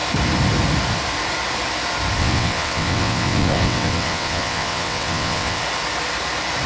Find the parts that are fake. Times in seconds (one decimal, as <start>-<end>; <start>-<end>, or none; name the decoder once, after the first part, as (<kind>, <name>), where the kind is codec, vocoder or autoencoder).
2.2-5.6 (vocoder, WaveNeXt)